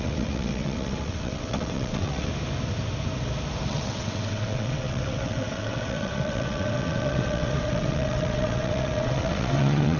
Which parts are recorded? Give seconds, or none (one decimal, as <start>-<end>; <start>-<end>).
2.3-3.7